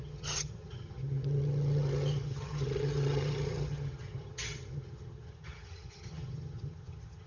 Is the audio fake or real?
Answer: fake